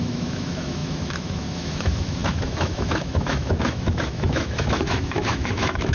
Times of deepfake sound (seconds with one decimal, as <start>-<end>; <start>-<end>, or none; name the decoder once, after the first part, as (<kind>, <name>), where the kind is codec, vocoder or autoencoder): 0.0-5.9 (autoencoder, DAC-VAE)

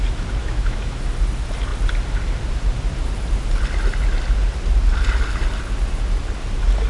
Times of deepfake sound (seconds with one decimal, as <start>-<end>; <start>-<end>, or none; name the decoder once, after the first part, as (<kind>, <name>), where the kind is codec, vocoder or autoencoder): 0.4-1.0 (autoencoder, DAC-VAE)

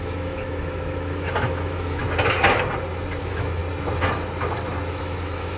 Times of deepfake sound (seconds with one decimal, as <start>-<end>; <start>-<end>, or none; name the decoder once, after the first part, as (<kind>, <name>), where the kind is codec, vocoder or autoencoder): 0.0-2.0 (autoencoder, DAC-VAE); 3.2-3.6; 4.9-5.6

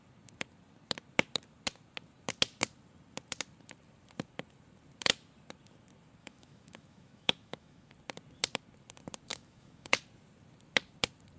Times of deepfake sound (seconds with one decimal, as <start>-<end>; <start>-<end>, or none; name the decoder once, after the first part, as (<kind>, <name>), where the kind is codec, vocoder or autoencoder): 6.2-7.9 (autoencoder, DAC-VAE); 9.3-10.0

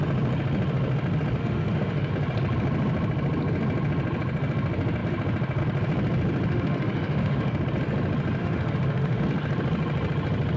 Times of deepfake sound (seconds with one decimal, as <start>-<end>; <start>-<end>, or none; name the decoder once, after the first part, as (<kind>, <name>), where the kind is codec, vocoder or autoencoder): 1.4-2.1 (autoencoder, DAC-VAE); 6.5-7.6; 8.4-9.2

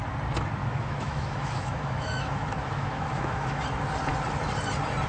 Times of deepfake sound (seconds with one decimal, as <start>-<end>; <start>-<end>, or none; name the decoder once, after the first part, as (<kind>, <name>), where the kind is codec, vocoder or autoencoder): 0.6-3.6 (autoencoder, DAC-VAE)

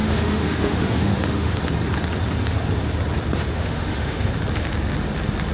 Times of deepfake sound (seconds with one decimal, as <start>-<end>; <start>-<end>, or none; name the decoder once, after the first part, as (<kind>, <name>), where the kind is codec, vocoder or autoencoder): 0.0-1.5 (autoencoder, DAC-VAE); 3.5-4.3

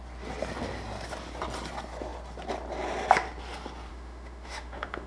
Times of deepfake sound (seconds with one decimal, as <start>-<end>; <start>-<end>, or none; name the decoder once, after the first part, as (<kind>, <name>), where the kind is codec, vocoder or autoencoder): 3.9-5.1 (autoencoder, DAC-VAE)